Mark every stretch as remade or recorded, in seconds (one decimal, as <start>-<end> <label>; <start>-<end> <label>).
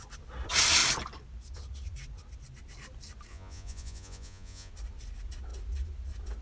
0.0-3.3 recorded; 3.3-4.7 remade; 4.7-6.4 recorded